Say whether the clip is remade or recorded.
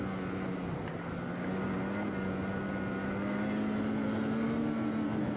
recorded